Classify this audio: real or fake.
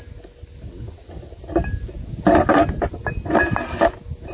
real